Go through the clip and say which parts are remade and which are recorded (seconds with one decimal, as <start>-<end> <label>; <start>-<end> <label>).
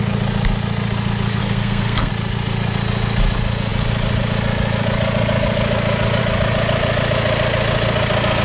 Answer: 0.0-1.4 recorded; 1.4-2.1 remade; 2.1-8.4 recorded